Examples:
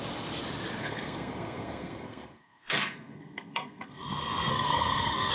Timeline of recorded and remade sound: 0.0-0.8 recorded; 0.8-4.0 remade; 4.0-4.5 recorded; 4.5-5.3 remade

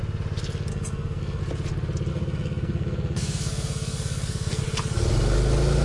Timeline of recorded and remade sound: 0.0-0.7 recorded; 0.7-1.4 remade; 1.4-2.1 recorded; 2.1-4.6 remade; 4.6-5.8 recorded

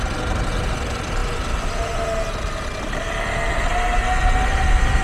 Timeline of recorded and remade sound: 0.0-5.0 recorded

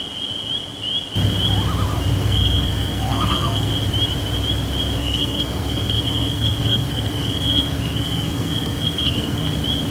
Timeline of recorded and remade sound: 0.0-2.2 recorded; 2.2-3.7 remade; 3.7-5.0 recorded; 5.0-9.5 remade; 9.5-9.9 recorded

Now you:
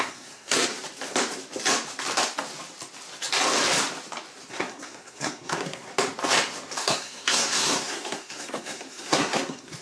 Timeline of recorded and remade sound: 0.0-0.7 remade; 0.7-4.5 recorded; 4.5-5.9 remade; 5.9-6.8 recorded; 6.8-9.8 remade

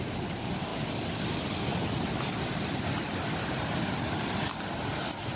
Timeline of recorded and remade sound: 0.0-5.4 recorded